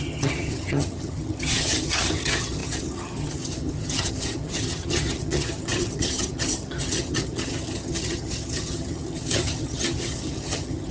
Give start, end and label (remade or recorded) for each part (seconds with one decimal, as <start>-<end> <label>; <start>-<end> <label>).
0.0-10.9 remade